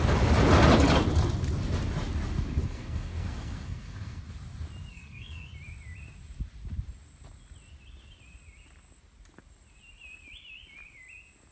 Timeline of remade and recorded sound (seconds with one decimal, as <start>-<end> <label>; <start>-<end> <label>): 0.0-2.6 recorded; 2.6-4.2 remade; 4.2-4.9 recorded; 4.9-5.5 remade; 5.5-11.5 recorded